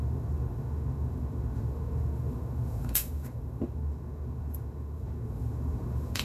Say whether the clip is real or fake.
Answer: fake